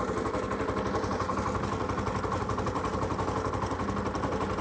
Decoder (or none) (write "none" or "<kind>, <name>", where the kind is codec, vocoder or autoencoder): none